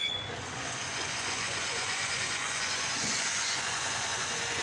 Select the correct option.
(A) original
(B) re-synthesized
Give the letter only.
B